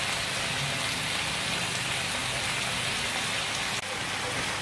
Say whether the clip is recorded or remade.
recorded